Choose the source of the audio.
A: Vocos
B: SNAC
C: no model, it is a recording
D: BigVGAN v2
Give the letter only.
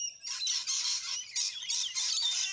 C